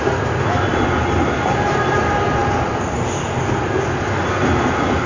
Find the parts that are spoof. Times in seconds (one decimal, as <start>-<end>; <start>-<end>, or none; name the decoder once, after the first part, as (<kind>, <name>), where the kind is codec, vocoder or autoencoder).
none